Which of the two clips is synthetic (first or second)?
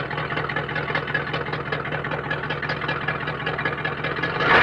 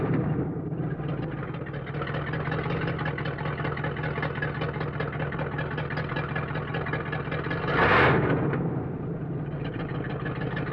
second